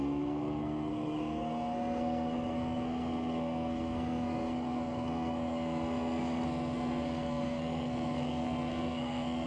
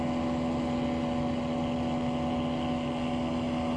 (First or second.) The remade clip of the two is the first